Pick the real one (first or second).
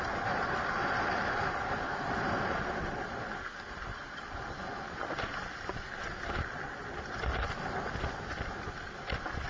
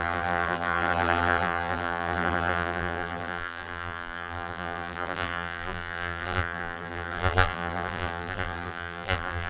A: first